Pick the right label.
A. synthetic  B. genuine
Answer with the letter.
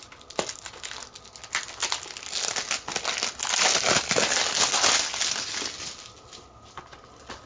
B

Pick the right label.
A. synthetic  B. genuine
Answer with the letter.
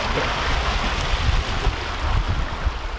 B